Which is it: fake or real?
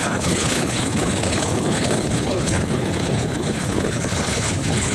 fake